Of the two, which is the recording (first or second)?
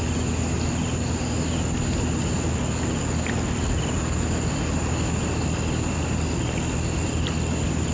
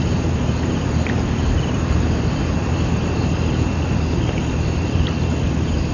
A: first